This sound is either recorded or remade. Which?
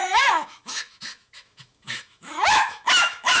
remade